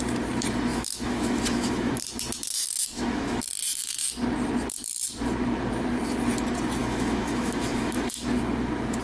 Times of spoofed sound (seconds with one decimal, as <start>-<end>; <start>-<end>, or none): 0.7-1.9; 2.5-3.5; 6.8-8.4